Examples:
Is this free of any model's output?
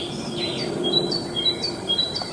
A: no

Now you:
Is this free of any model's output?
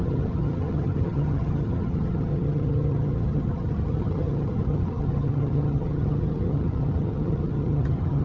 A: no